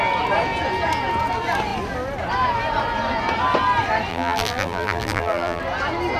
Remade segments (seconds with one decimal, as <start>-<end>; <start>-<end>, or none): 4.1-5.6